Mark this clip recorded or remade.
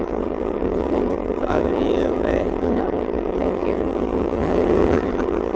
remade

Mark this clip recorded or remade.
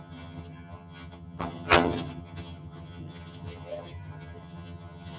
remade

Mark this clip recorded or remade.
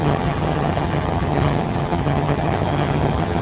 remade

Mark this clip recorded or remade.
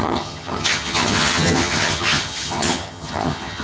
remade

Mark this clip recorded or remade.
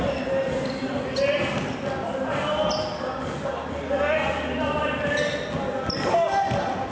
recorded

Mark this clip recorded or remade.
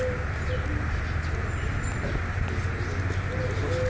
recorded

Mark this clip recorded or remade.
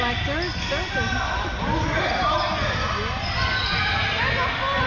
recorded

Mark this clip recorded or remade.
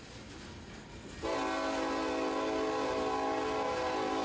recorded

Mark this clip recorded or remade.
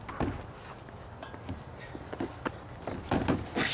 recorded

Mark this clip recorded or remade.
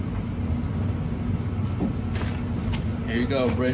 recorded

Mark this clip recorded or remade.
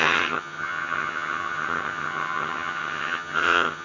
remade